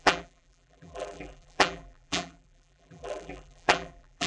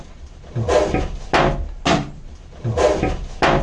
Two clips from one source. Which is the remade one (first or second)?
first